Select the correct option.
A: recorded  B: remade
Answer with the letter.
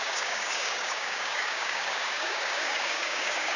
B